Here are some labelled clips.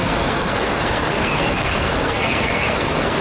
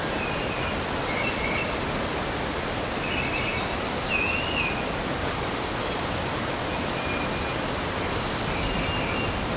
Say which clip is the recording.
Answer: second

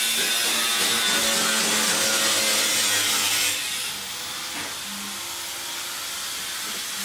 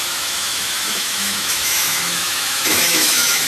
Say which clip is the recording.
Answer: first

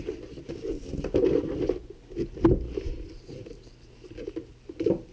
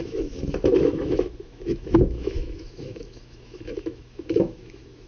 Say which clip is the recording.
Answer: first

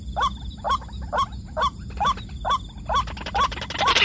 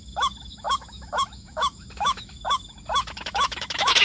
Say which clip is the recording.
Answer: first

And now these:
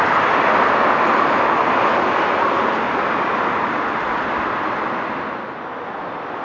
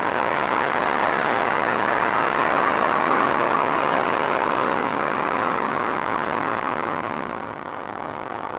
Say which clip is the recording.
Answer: first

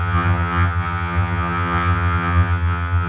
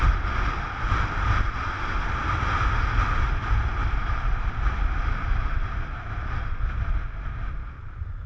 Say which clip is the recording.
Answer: second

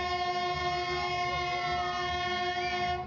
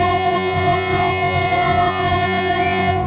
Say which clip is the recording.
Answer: first